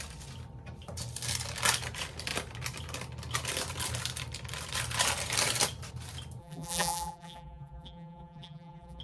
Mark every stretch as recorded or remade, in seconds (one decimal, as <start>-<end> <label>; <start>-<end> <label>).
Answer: 0.0-6.4 recorded; 6.4-9.0 remade